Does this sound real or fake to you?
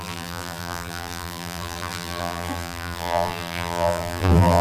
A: fake